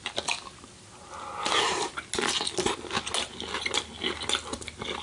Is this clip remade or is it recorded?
recorded